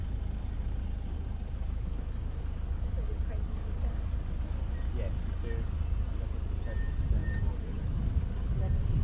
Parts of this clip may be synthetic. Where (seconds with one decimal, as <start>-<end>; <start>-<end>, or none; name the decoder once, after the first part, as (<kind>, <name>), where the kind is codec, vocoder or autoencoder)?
none